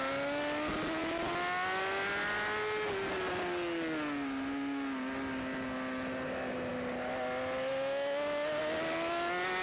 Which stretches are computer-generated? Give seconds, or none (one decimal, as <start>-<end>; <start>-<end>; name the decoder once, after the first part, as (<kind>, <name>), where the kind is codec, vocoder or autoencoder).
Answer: none